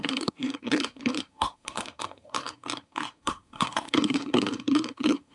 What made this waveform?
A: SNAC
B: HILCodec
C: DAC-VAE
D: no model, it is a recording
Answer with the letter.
A